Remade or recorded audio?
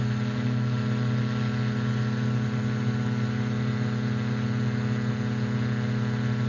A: recorded